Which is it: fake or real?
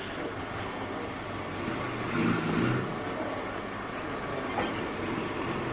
real